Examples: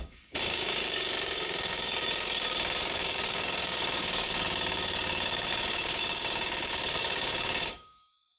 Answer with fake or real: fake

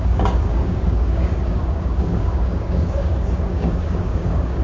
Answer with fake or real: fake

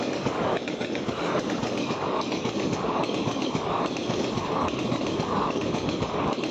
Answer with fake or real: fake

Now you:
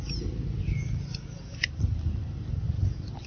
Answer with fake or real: real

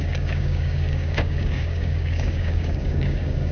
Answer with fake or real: fake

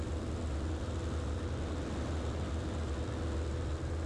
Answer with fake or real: real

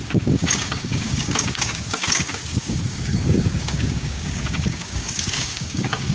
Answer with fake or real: fake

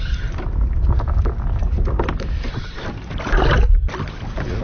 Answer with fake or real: real